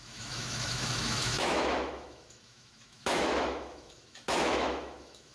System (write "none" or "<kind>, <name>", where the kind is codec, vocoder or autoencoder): autoencoder, DAC-VAE